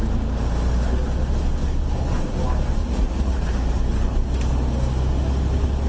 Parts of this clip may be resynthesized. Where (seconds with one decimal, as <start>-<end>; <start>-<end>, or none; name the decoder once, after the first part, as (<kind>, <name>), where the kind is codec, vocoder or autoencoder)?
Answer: 2.8-3.4 (vocoder, Vocos)